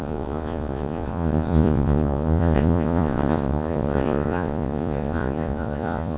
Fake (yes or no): yes